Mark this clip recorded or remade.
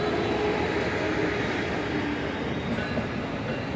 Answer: recorded